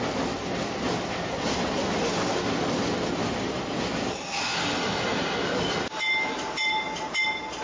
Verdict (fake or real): real